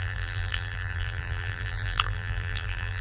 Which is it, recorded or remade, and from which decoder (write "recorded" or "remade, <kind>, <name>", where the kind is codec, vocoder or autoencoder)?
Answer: remade, vocoder, BigVGAN v2